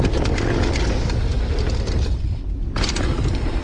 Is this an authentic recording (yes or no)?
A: yes